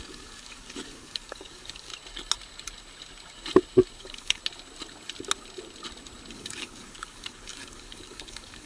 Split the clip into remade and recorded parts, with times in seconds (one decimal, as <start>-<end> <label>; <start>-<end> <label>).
0.0-1.9 remade; 1.9-4.0 recorded; 4.0-4.4 remade; 4.4-6.3 recorded; 6.3-8.7 remade

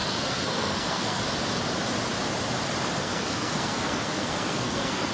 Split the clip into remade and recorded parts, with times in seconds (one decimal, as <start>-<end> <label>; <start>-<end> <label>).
0.0-1.2 remade; 1.2-3.0 recorded; 3.0-5.1 remade